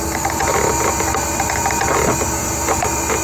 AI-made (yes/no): no